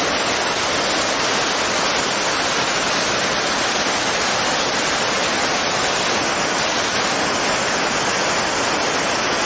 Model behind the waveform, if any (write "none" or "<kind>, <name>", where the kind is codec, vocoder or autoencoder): none